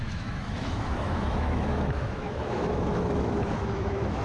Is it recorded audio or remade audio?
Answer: remade